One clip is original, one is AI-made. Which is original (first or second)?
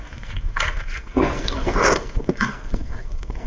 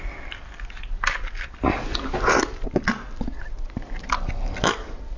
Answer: second